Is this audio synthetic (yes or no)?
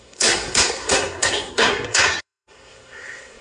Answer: yes